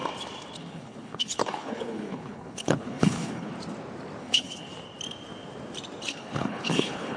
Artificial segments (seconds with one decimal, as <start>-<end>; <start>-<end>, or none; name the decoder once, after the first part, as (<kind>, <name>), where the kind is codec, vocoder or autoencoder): 0.6-3.5 (codec, HILCodec); 4.2-4.7; 6.1-7.2